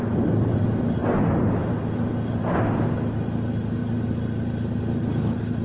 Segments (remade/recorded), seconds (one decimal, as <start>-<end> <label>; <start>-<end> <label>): 0.0-5.6 recorded